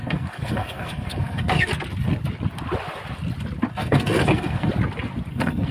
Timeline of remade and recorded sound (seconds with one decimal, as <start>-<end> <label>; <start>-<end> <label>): 0.0-1.7 remade; 1.7-3.7 recorded; 3.7-4.7 remade; 4.7-5.3 recorded; 5.3-5.7 remade